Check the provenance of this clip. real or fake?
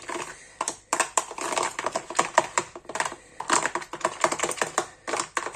fake